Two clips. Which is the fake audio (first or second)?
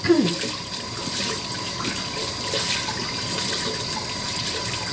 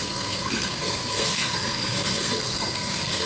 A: second